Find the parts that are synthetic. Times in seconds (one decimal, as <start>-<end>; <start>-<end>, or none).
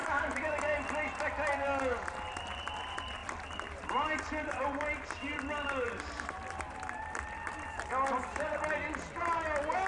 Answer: 0.0-0.5; 3.2-7.9